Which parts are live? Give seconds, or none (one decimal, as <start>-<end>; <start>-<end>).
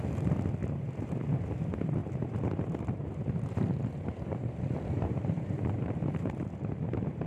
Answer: 0.0-0.6; 1.5-2.0; 6.4-7.3